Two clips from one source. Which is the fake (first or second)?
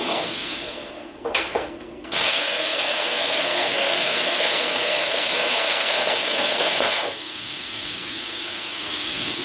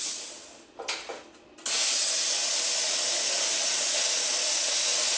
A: first